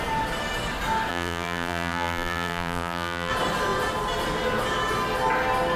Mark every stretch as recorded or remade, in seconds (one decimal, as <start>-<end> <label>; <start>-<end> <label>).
0.0-1.1 recorded; 1.1-3.3 remade; 3.3-5.8 recorded